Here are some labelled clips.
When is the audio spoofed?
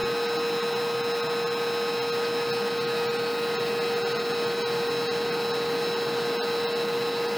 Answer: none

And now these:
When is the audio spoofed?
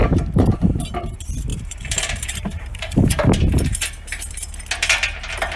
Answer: 0.0-0.8; 1.5-4.6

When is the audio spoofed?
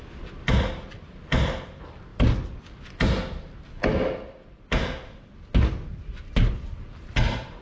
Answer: none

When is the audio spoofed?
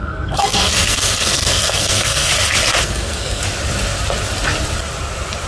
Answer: 0.0-2.3; 2.8-3.4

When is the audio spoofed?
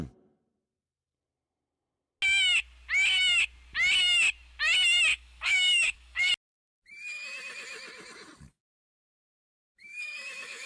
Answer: 5.1-6.3; 8.5-10.7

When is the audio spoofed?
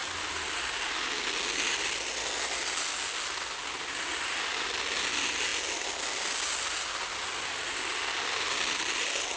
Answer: none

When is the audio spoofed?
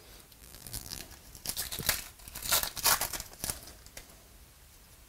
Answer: 0.4-1.0